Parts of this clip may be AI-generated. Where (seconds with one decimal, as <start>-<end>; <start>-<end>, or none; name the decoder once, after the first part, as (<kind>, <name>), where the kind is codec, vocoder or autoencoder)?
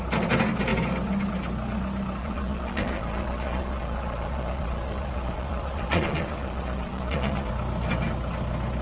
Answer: 2.2-7.5 (vocoder, Vocos)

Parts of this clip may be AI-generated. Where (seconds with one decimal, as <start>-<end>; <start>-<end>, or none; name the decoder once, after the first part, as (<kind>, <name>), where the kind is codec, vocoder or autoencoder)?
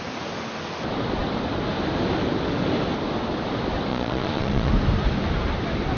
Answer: 3.9-4.7 (vocoder, Vocos)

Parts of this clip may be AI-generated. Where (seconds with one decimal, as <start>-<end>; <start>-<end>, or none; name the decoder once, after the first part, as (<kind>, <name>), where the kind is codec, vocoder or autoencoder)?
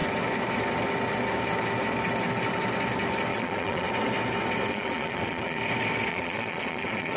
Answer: 3.3-3.9 (vocoder, Vocos); 4.7-5.6; 6.1-7.2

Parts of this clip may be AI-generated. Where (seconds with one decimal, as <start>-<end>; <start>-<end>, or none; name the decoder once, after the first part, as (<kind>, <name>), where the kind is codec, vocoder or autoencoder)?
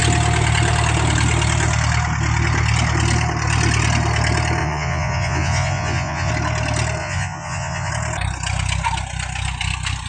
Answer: 4.6-6.3 (vocoder, Vocos); 7.0-7.9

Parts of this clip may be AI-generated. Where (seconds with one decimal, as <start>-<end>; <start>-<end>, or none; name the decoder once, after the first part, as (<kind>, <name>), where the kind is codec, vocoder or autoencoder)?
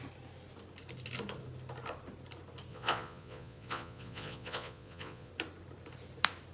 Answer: 2.7-5.3 (vocoder, Vocos)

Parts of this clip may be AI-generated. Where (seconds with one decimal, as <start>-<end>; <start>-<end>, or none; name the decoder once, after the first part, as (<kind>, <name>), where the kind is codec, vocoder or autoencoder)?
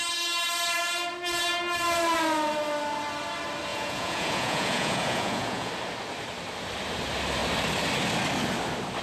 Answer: 3.7-5.7 (vocoder, Vocos)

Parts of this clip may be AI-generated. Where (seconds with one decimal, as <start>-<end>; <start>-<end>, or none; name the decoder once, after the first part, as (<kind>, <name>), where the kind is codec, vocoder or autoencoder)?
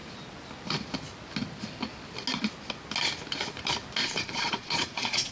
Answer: 4.0-5.3 (vocoder, Vocos)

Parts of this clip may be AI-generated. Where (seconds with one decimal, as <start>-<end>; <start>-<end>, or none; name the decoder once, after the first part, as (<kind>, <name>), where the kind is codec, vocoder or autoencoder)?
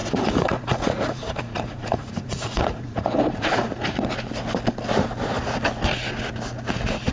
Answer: 0.0-4.1 (vocoder, Vocos)